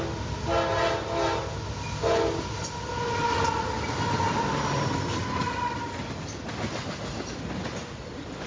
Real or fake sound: real